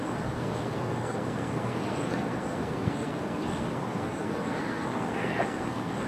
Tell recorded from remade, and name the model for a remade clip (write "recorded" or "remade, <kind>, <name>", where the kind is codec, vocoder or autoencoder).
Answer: remade, codec, SNAC